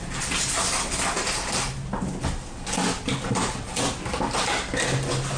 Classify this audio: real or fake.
real